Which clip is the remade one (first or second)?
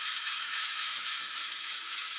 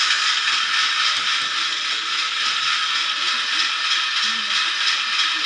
first